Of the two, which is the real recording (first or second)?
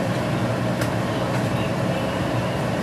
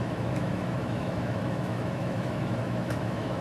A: first